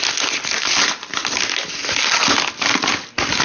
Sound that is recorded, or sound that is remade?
recorded